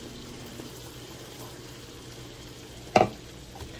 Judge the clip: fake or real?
real